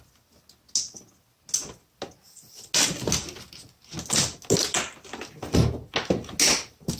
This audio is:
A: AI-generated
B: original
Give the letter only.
B